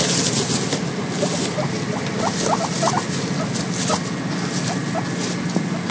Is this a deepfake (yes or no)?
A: no